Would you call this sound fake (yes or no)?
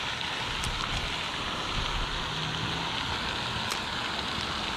no